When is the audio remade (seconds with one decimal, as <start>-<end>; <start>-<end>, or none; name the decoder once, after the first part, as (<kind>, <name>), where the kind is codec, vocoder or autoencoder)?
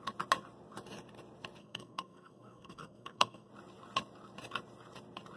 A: 1.6-3.5 (codec, SNAC)